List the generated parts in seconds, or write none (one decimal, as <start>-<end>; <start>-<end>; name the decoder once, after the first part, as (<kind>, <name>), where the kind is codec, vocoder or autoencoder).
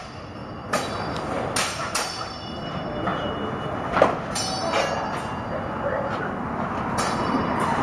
none